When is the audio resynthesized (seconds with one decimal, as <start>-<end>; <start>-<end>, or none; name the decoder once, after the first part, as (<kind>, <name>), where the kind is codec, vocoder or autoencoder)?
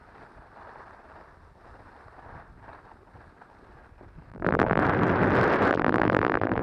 4.3-4.8 (vocoder, BigVGAN v2); 5.7-6.6